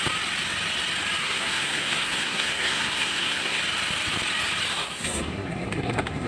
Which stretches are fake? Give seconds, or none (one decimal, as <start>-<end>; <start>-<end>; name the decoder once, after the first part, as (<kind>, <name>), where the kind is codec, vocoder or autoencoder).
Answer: 1.2-3.6 (codec, SNAC); 4.7-6.3